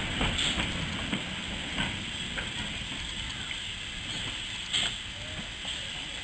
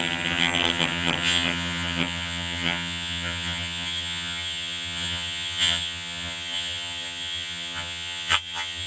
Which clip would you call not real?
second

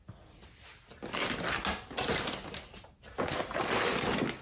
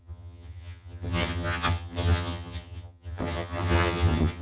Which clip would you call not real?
second